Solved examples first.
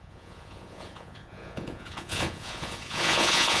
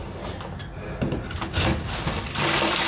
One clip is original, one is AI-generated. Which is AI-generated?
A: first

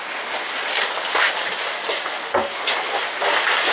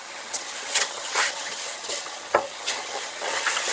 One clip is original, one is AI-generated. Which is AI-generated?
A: second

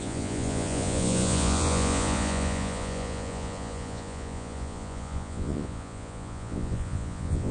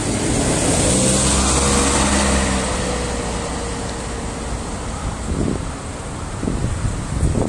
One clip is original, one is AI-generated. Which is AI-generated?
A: first